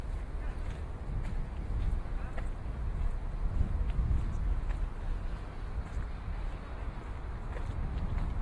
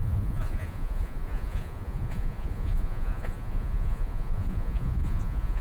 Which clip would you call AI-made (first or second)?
second